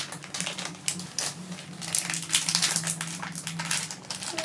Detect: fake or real real